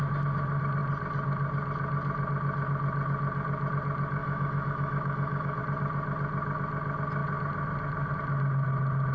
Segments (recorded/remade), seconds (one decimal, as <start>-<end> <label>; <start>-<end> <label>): 0.0-4.2 recorded; 4.2-5.6 remade; 5.6-9.1 recorded

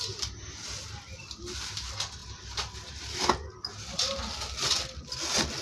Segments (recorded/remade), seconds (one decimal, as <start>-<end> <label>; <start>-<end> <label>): 0.0-5.6 recorded

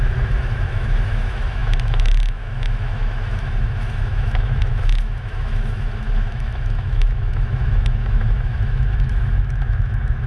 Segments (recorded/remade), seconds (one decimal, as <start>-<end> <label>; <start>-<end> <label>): 0.0-10.3 remade

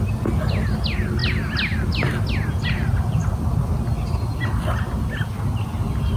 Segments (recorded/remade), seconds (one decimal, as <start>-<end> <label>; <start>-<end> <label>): 0.0-6.2 recorded

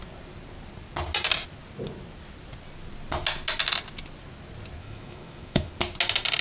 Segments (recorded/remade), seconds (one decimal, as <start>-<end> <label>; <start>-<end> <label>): 0.0-4.8 recorded; 4.8-5.7 remade; 5.7-6.4 recorded